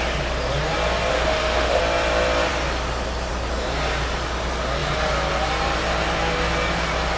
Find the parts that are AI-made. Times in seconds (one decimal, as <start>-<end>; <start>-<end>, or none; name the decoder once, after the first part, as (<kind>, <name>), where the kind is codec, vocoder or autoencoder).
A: 1.1-1.8 (autoencoder, DAC-VAE)

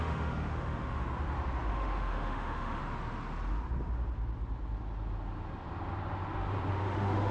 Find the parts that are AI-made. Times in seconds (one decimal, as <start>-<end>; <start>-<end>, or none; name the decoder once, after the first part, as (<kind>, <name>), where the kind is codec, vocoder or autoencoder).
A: 0.0-1.0 (autoencoder, DAC-VAE); 1.7-2.8; 6.7-7.3

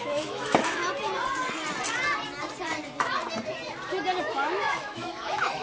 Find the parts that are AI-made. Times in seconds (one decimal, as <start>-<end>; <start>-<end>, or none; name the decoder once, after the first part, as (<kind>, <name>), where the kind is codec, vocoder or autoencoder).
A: 0.0-0.8 (autoencoder, DAC-VAE); 4.2-5.6

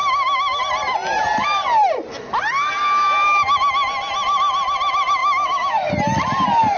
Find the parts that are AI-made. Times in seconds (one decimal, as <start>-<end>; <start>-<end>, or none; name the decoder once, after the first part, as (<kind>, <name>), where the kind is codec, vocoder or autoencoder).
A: 0.0-0.6 (autoencoder, DAC-VAE); 5.2-5.9

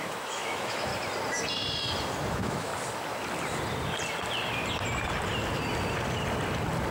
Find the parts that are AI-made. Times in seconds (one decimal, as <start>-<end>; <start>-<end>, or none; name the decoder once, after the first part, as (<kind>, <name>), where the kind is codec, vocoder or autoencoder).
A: 0.0-0.9 (autoencoder, DAC-VAE); 2.3-2.7

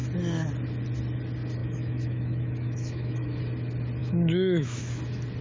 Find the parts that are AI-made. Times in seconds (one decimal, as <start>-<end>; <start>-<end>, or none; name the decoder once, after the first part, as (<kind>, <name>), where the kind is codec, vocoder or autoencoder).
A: 1.6-3.4 (autoencoder, DAC-VAE); 4.0-4.8

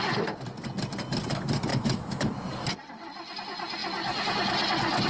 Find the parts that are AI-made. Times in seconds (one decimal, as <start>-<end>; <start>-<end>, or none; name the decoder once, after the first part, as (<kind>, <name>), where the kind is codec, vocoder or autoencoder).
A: 1.7-2.3 (autoencoder, DAC-VAE)

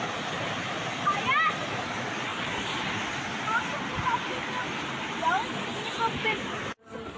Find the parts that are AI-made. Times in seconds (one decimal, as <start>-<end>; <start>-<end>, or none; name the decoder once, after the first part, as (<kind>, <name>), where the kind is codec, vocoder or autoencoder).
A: none